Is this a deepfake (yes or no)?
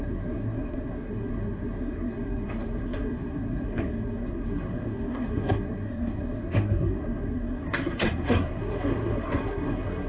yes